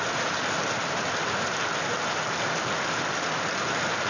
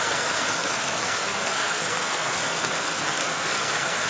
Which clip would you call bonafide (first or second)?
first